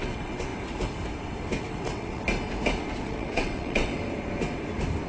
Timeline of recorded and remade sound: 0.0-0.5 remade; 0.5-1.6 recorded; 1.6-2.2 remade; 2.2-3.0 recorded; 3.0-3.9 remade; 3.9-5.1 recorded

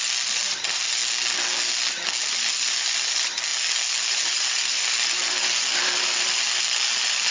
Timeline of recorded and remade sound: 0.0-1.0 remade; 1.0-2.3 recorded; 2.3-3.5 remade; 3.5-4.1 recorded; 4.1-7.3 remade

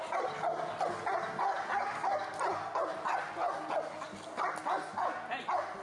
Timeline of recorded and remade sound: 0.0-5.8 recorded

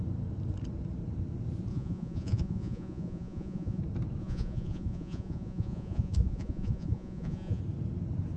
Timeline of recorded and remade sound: 0.0-1.7 recorded; 1.7-3.8 remade; 3.8-4.2 recorded; 4.2-7.6 remade; 7.6-8.4 recorded

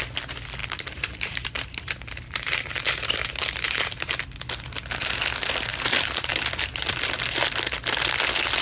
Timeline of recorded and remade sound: 0.0-0.6 recorded; 0.6-4.1 remade; 4.1-5.7 recorded; 5.7-6.3 remade; 6.3-8.6 recorded